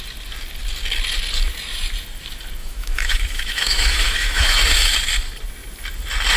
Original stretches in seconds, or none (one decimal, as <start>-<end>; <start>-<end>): 0.0-2.6; 4.6-6.4